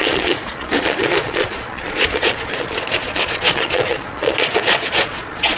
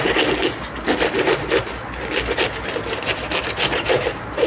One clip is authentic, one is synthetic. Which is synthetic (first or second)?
first